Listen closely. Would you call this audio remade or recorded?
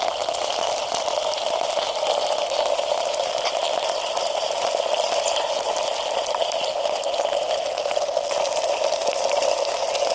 recorded